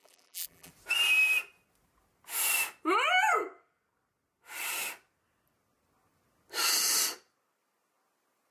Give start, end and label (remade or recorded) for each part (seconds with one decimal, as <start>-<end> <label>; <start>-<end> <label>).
0.0-0.7 remade; 0.7-8.5 recorded